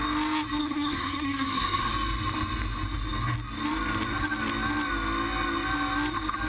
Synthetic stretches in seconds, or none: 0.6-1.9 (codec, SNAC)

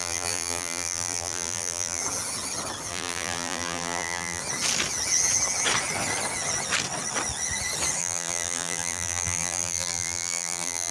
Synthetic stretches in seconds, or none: 0.0-2.0 (vocoder, BigVGAN v2); 2.9-4.4; 8.0-10.9

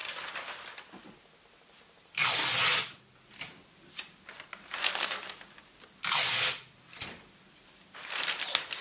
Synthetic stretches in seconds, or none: 0.7-2.7 (vocoder, BigVGAN v2); 6.8-8.8

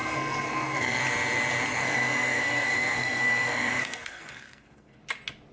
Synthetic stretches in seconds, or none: 0.0-1.0 (codec, SNAC); 1.7-5.0

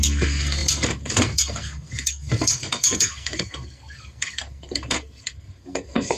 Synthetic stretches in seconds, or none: 0.0-6.2 (codec, SNAC)

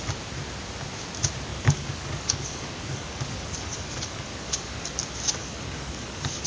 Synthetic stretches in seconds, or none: 1.5-4.9 (codec, DAC); 5.4-6.5